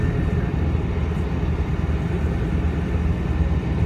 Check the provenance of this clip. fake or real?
real